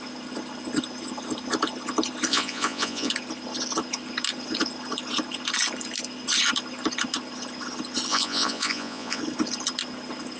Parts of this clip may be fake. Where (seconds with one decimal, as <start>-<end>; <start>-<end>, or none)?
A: 2.3-3.1; 8.1-9.2